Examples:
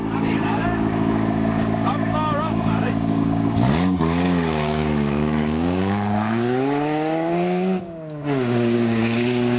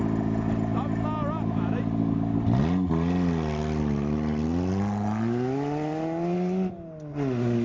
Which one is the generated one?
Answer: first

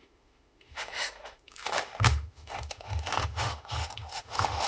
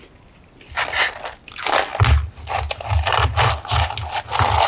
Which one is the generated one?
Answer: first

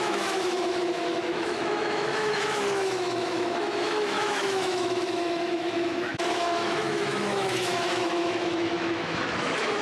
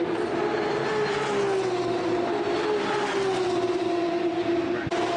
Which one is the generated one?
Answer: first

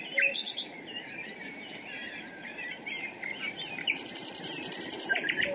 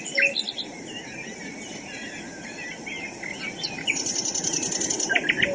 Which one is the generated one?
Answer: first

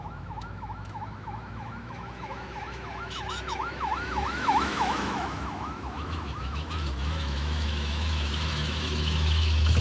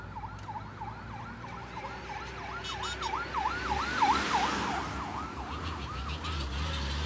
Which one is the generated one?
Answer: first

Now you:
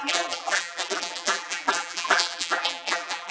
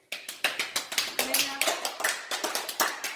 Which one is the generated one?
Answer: first